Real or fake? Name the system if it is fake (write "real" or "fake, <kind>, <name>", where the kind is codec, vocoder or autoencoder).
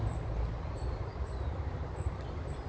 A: real